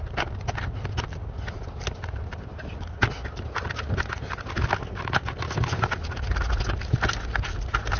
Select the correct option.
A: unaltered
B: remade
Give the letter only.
A